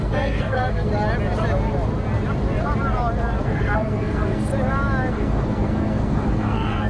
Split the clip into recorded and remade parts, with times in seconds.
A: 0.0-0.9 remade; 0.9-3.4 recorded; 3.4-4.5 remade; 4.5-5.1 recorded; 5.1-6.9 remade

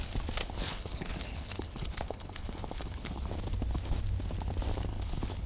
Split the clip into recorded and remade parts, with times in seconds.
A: 0.0-0.4 recorded; 0.4-3.3 remade; 3.3-4.9 recorded; 4.9-5.5 remade

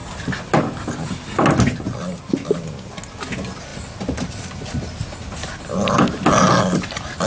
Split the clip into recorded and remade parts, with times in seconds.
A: 0.0-7.3 recorded

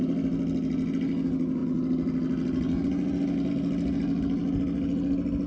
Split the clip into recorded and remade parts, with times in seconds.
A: 0.0-5.5 recorded

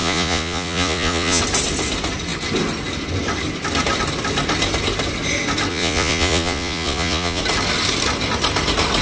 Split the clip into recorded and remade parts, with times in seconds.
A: 0.0-1.4 remade; 1.4-5.7 recorded; 5.7-7.4 remade; 7.4-9.0 recorded

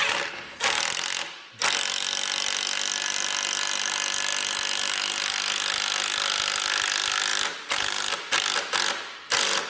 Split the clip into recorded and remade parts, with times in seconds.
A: 0.0-9.7 recorded

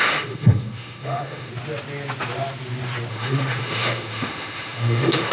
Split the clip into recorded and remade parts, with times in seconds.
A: 0.0-1.5 remade; 1.5-3.1 recorded; 3.1-5.3 remade

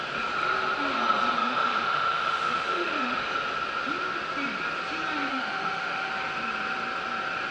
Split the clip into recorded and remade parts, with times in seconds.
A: 0.0-1.4 recorded; 1.4-3.2 remade; 3.2-5.3 recorded; 5.3-6.1 remade; 6.1-7.5 recorded